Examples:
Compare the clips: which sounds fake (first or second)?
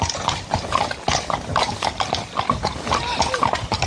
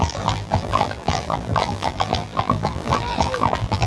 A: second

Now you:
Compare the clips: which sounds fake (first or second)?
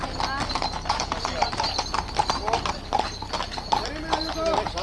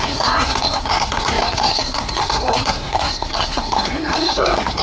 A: second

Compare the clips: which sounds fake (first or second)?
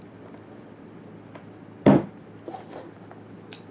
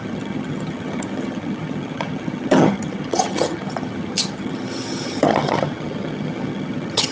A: second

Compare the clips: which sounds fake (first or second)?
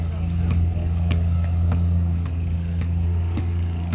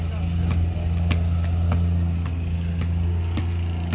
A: first